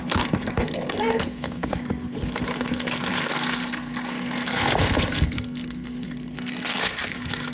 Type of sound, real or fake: fake